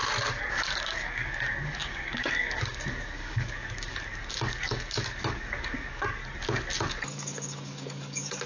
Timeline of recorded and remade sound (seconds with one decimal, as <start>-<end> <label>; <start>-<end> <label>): 0.0-0.5 recorded; 0.5-6.2 remade; 6.2-6.9 recorded; 6.9-8.5 remade